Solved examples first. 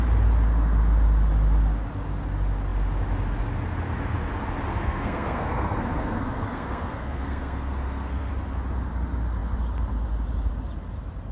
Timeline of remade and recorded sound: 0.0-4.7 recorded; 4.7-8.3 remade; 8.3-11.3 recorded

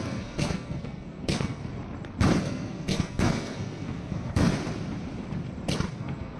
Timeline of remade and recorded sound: 0.0-1.6 remade; 1.6-2.4 recorded; 2.4-4.5 remade; 4.5-5.9 recorded; 5.9-6.4 remade

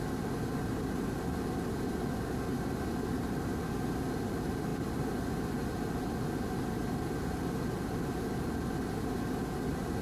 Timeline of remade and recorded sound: 0.0-10.0 recorded